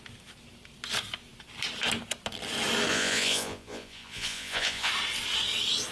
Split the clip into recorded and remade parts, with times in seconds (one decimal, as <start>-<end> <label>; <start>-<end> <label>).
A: 0.0-2.9 recorded; 2.9-4.9 remade; 4.9-5.9 recorded